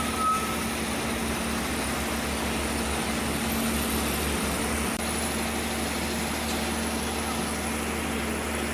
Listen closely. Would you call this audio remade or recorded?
recorded